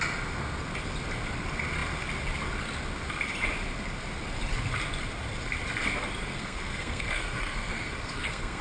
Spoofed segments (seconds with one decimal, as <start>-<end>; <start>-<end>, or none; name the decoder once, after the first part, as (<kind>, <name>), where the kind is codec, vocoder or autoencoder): 6.2-8.6 (codec, SNAC)